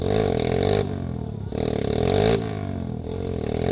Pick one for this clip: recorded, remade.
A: recorded